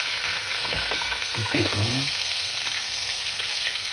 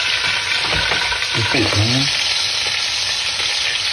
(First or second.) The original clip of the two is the second